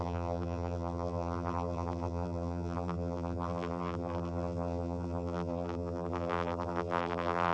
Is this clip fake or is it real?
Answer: fake